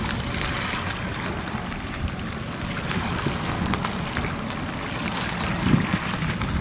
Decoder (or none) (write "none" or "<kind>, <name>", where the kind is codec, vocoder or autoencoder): none